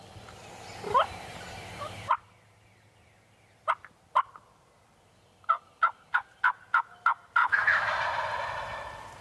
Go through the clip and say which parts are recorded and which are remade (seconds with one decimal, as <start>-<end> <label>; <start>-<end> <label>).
0.0-7.4 recorded; 7.4-7.9 remade; 7.9-9.2 recorded